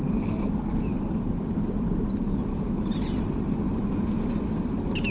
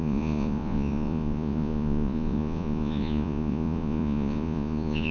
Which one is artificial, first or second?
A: second